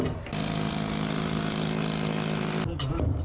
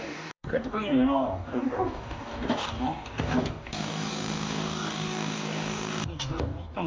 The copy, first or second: second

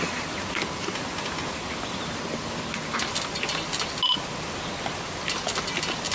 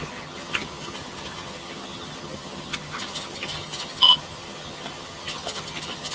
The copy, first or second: second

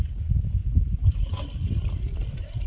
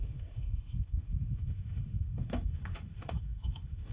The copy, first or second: second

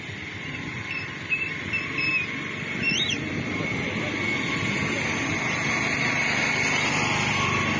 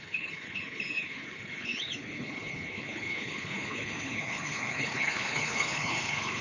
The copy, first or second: second